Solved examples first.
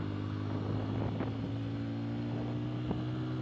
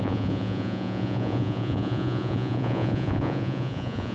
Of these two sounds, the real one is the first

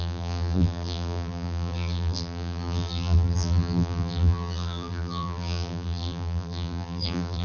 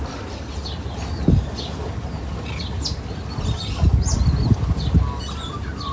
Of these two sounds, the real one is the second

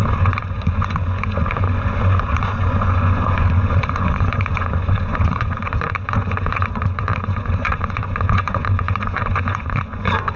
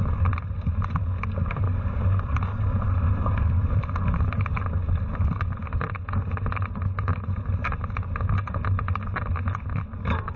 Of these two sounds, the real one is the second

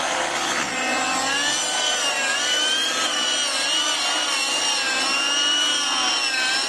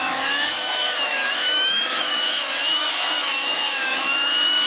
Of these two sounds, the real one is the first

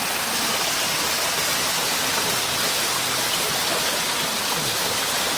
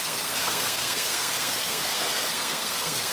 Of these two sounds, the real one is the first